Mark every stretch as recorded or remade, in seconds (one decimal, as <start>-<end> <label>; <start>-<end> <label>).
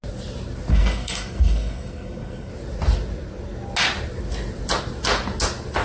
0.0-0.7 recorded; 0.7-2.5 remade; 2.5-5.8 recorded